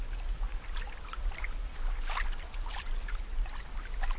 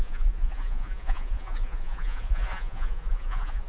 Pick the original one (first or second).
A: first